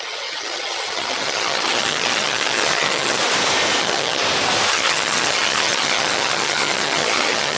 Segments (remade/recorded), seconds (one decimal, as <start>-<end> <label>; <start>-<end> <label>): 0.0-3.2 remade; 3.2-3.8 recorded; 3.8-4.2 remade; 4.2-4.7 recorded; 4.7-7.6 remade